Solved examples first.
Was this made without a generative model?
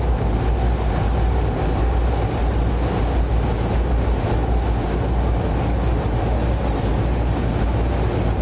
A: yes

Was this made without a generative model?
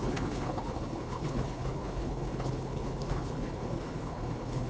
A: no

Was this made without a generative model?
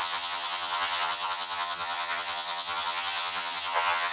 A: no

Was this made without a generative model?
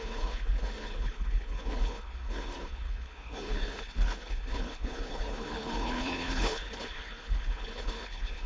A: no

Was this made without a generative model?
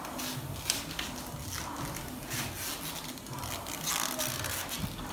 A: yes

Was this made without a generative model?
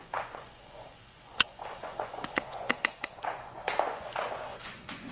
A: no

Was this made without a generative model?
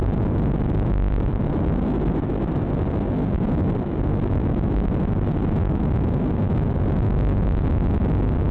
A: no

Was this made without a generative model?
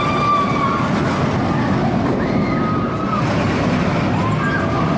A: yes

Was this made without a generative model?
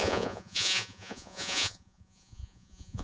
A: no